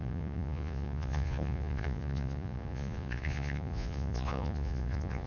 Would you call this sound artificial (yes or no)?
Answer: yes